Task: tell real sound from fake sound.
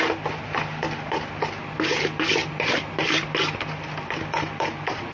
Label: real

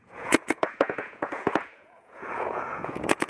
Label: fake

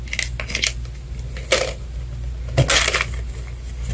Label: real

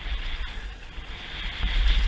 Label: real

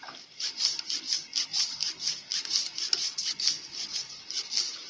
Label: real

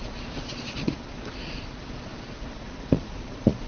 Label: fake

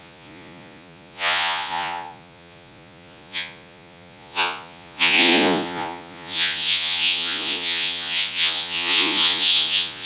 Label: fake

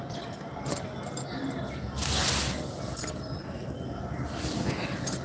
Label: real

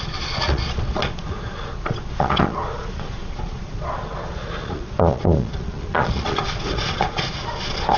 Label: fake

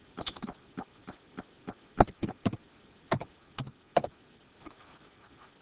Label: real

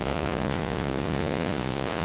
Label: fake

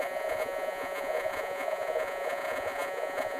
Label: fake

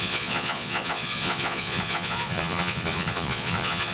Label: fake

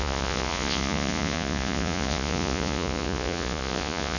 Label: fake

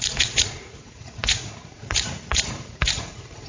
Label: fake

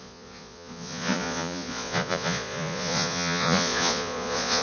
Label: fake